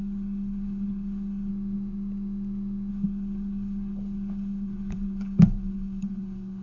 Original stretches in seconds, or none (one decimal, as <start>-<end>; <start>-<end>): 1.5-2.9